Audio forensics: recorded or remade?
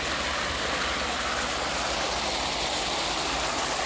recorded